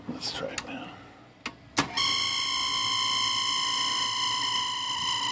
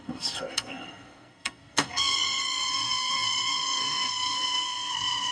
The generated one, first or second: second